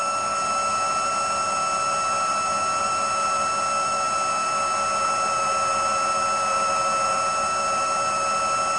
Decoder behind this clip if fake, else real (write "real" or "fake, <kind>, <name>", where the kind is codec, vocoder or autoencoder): real